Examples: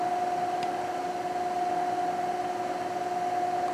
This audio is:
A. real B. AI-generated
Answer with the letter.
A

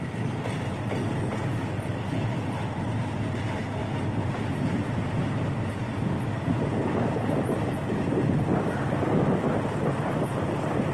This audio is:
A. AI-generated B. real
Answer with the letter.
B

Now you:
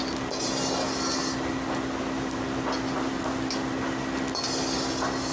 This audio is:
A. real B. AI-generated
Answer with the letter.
A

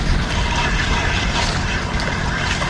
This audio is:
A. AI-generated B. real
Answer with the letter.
B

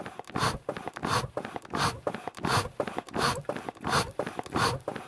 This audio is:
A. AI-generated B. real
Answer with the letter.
B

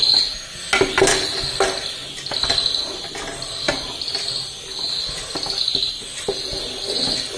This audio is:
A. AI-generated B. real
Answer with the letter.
B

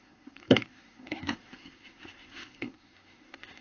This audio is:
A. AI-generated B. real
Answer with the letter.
A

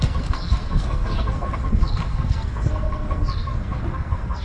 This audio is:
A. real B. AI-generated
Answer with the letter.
B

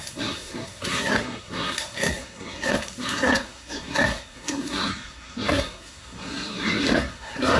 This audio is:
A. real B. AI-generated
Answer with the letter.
B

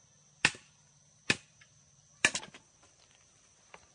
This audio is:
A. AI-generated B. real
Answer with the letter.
B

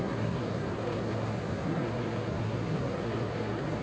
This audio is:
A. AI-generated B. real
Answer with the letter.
A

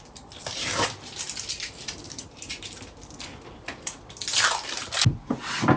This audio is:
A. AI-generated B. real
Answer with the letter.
B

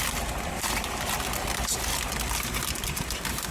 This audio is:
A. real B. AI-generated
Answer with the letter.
A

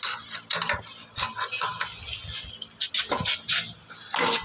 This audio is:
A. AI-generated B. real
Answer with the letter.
B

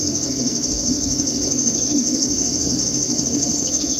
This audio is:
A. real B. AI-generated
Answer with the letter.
B